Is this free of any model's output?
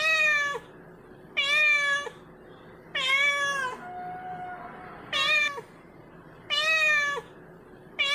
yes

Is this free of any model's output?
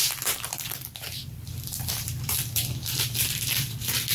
no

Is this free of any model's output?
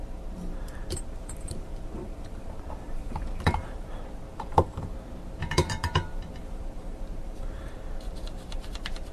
no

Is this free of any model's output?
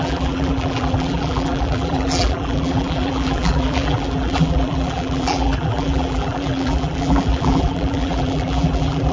no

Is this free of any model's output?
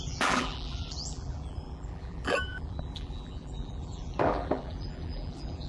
no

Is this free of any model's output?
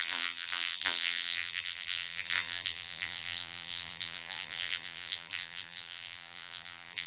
no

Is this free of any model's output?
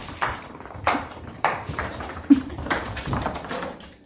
no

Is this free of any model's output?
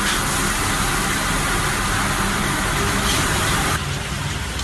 yes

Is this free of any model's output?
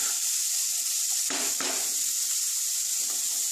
no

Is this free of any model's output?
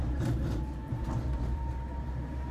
no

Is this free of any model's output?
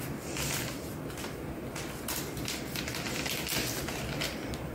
yes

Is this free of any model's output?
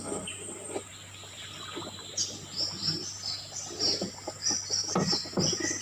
yes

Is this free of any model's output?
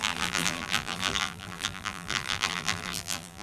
no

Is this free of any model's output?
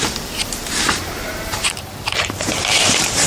no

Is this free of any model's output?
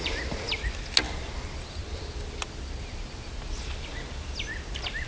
yes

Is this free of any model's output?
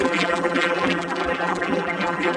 no